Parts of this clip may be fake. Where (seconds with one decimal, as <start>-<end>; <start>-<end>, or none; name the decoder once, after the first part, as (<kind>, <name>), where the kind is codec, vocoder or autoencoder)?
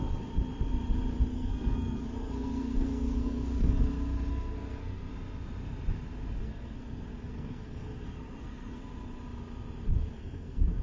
1.3-3.8 (codec, SNAC); 4.3-5.1; 6.4-8.8; 9.8-10.8